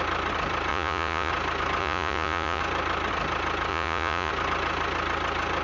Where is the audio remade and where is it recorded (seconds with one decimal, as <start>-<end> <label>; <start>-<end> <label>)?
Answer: 0.0-0.7 recorded; 0.7-1.3 remade; 1.3-1.8 recorded; 1.8-2.6 remade; 2.6-3.7 recorded; 3.7-4.3 remade; 4.3-5.6 recorded